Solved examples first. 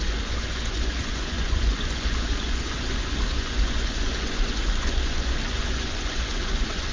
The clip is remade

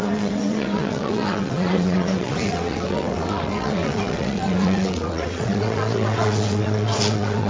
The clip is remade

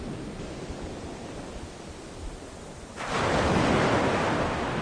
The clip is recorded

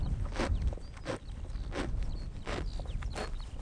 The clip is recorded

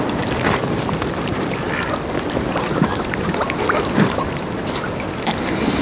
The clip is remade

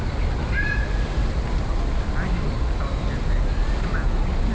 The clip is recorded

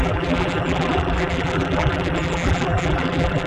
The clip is remade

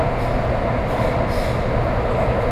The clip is recorded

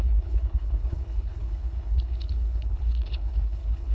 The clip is remade